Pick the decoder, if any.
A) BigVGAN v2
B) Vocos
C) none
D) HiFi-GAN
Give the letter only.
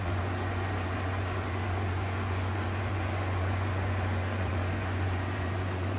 B